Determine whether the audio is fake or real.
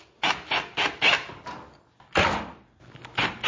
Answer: real